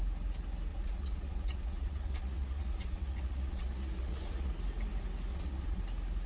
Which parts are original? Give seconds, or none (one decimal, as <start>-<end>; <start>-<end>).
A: 0.0-0.7; 4.5-5.3; 5.8-6.3